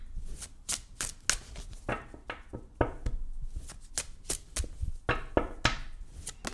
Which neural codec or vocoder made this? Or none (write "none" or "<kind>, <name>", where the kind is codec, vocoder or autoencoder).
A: none